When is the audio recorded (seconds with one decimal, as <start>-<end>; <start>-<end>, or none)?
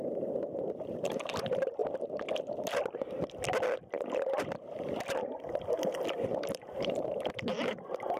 1.8-6.4